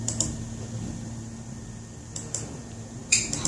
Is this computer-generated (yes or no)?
yes